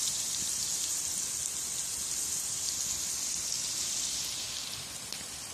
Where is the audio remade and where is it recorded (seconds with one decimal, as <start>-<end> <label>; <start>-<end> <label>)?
0.0-0.6 remade; 0.6-3.9 recorded; 3.9-5.5 remade